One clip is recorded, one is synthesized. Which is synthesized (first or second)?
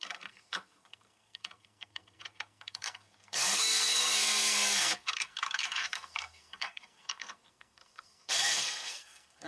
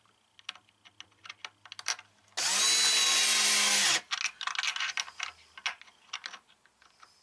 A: first